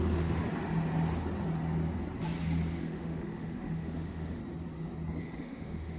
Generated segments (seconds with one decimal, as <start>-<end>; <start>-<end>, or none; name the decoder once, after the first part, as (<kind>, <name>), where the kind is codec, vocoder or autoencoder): 0.0-0.4 (autoencoder, DAC-VAE); 2.8-4.4; 5.2-6.0